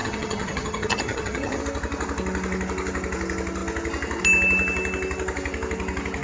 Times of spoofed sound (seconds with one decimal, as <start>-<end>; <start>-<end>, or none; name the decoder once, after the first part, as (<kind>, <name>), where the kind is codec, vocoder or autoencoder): 0.0-1.6 (vocoder, HiFi-GAN)